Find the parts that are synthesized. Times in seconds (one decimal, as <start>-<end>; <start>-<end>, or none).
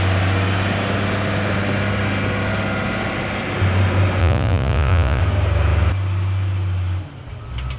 4.2-5.2